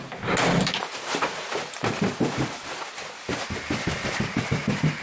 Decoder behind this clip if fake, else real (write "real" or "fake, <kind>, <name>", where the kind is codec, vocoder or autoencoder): real